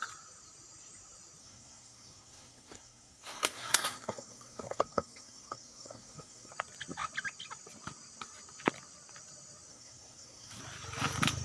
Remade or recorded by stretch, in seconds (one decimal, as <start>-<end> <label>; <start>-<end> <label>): 0.0-1.4 recorded; 1.4-6.5 remade; 6.5-9.7 recorded; 9.7-10.6 remade; 10.6-11.4 recorded